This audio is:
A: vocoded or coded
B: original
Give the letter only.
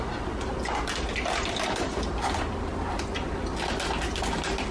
B